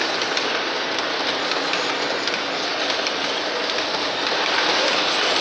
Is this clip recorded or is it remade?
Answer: recorded